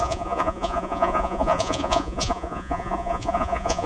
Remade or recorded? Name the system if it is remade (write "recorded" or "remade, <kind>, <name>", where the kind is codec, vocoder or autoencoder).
remade, vocoder, Vocos